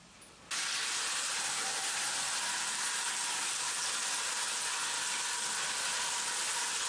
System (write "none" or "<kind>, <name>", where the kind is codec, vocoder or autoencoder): none